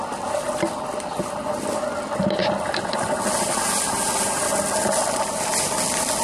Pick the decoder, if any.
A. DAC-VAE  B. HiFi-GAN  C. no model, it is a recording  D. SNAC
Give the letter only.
C